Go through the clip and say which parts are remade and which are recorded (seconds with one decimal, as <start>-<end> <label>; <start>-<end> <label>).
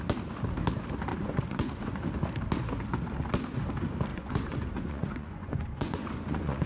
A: 0.0-1.1 recorded; 1.1-2.0 remade; 2.0-4.1 recorded; 4.1-6.7 remade